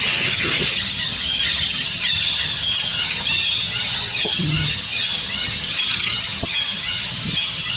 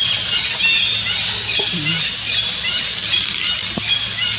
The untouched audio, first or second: second